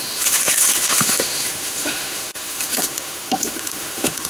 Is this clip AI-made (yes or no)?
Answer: yes